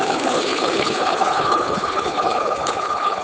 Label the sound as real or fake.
fake